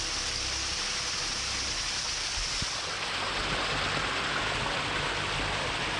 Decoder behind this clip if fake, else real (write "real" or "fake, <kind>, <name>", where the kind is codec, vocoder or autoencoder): real